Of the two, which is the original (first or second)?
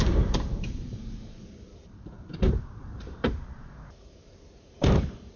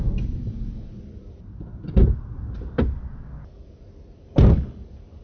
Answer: second